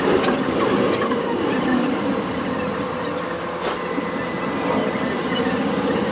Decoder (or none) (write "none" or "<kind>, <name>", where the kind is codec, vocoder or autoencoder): none